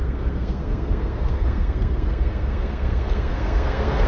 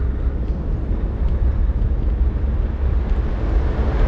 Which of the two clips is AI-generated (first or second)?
first